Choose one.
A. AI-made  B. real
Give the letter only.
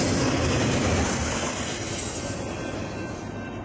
B